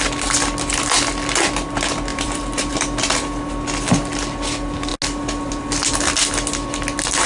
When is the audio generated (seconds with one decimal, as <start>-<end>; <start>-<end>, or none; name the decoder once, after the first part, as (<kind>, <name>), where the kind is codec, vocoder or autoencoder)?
2.1-3.0 (vocoder, BigVGAN v2)